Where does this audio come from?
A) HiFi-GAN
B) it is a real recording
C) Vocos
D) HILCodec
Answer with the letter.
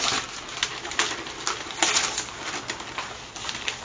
B